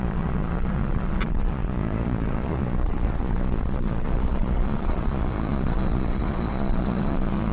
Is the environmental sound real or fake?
fake